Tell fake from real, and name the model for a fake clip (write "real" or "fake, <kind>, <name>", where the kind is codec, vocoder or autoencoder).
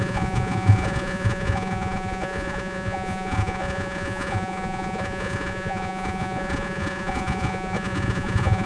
fake, vocoder, Vocos